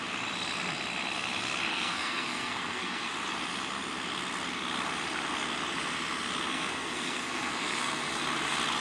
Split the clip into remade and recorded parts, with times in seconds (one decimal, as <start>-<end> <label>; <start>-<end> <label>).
0.0-1.7 recorded; 1.7-3.1 remade; 3.1-6.5 recorded; 6.5-8.0 remade; 8.0-8.8 recorded